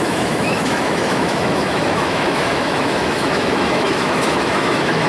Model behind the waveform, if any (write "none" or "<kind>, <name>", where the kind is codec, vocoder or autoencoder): autoencoder, DAC-VAE